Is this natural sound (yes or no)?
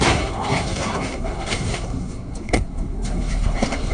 no